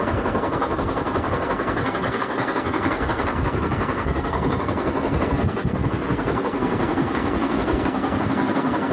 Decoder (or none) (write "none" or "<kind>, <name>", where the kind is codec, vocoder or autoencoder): codec, SNAC